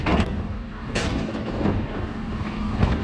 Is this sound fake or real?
fake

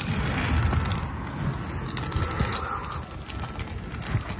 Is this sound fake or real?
real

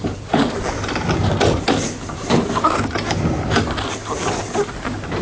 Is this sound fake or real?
real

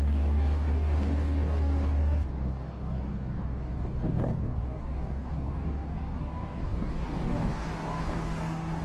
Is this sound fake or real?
fake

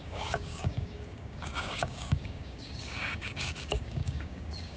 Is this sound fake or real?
fake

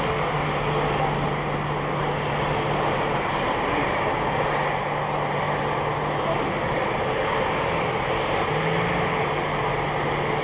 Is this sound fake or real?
real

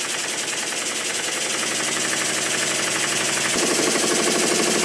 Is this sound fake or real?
real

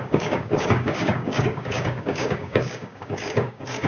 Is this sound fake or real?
fake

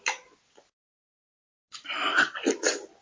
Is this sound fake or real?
real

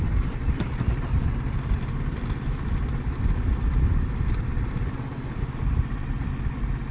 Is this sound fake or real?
real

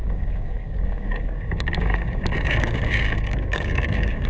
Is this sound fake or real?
fake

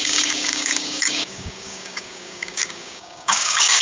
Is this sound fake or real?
fake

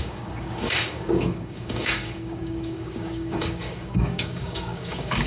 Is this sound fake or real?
fake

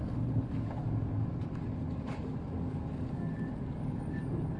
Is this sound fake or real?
fake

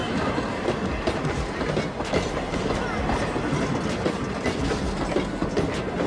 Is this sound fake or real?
real